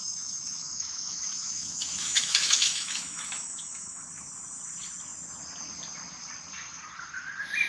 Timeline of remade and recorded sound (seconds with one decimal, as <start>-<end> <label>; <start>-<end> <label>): 0.0-4.0 remade; 4.0-7.7 recorded